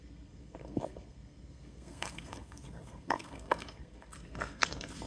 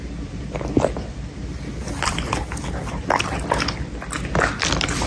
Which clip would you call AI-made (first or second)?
first